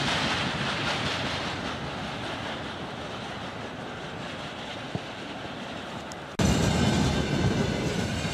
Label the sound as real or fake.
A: real